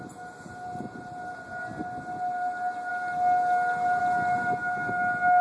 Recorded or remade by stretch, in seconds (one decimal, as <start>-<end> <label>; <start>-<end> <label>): 0.0-5.4 recorded